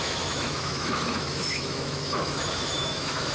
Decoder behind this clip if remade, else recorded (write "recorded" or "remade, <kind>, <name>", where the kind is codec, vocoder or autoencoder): remade, autoencoder, DAC-VAE